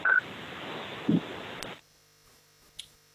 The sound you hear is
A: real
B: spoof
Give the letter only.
A